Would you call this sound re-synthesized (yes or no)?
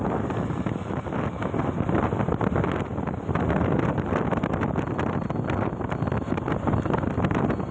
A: no